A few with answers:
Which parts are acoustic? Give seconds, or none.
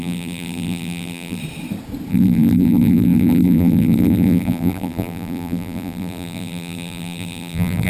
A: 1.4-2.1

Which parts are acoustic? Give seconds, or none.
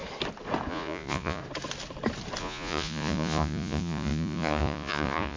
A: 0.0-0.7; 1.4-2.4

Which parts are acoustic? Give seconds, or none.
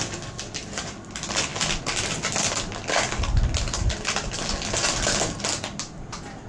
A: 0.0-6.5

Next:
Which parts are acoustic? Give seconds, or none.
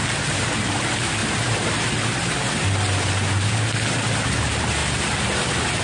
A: 0.0-5.8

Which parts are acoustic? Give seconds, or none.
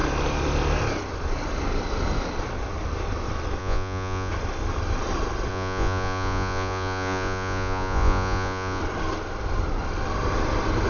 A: 0.0-3.6; 4.3-5.5; 8.8-10.9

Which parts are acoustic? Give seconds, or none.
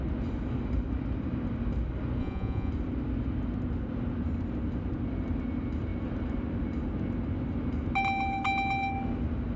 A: 0.0-2.2; 2.7-9.6